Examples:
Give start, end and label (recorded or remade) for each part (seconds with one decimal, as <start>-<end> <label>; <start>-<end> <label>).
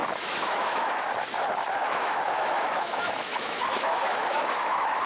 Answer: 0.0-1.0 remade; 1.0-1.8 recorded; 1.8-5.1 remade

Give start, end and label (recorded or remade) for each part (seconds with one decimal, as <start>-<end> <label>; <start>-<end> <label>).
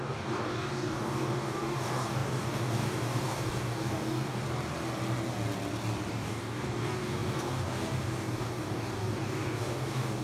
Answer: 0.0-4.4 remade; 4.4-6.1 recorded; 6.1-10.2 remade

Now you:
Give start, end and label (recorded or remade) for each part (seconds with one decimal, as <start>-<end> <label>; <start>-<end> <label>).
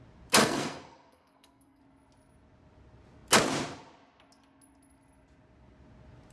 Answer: 0.0-0.4 recorded; 0.4-1.8 remade; 1.8-6.3 recorded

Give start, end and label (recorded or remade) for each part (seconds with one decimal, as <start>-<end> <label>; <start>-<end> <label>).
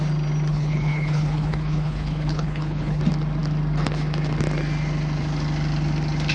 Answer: 0.0-0.5 recorded; 0.5-3.0 remade; 3.0-6.3 recorded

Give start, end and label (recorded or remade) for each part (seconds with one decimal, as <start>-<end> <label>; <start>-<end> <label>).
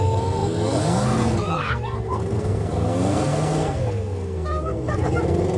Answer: 0.0-5.6 remade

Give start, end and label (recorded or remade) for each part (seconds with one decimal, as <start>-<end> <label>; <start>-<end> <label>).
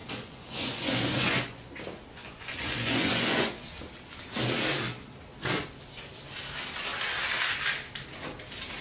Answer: 0.0-1.7 remade; 1.7-2.1 recorded; 2.1-3.8 remade; 3.8-8.8 recorded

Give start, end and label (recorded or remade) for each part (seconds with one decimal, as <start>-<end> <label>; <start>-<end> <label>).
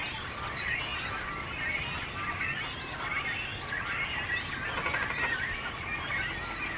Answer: 0.0-6.8 recorded